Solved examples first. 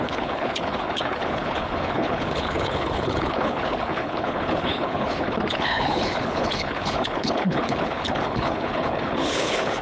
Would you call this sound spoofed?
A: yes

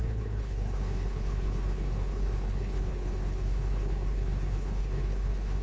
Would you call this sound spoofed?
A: yes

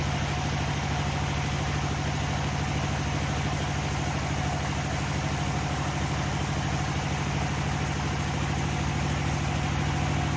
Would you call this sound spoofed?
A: no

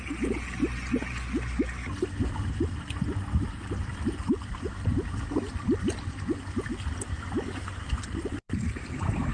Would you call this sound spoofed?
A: no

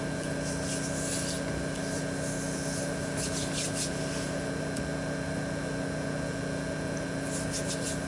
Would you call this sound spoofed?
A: no